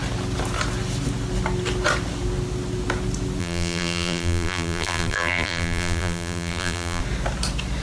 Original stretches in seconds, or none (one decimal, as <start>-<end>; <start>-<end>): 0.0-3.4; 7.0-7.8